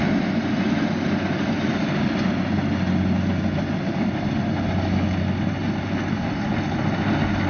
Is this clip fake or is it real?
real